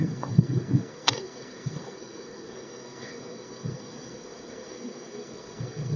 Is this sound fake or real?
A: fake